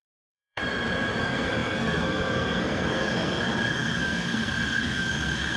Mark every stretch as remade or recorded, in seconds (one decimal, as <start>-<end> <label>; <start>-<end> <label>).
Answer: 0.0-0.6 remade; 0.6-1.2 recorded; 1.2-5.6 remade